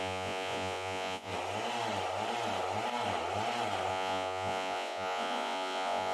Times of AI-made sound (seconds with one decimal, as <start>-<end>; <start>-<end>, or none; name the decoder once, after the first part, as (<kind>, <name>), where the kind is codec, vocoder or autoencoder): 0.0-1.3 (vocoder, Vocos); 3.9-6.1